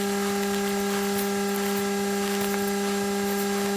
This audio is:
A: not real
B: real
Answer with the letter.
B